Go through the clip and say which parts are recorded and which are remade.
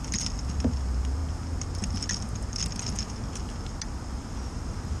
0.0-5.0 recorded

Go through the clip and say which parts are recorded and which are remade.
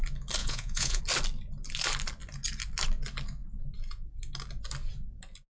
0.0-0.4 recorded; 0.4-1.0 remade; 1.0-5.6 recorded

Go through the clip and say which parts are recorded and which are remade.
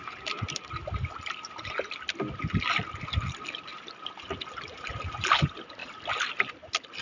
0.0-7.0 recorded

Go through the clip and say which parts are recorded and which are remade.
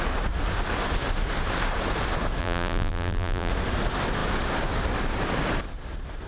0.0-2.4 recorded; 2.4-3.5 remade; 3.5-6.3 recorded